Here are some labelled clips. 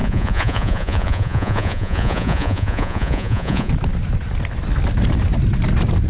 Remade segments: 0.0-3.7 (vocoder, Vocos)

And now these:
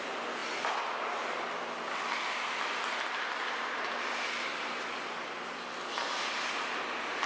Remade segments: none